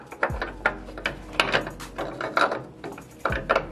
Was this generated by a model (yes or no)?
no